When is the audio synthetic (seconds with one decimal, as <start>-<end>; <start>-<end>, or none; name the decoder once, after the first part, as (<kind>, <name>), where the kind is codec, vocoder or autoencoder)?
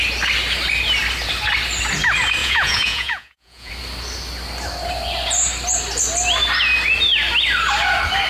2.4-3.7 (vocoder, Vocos)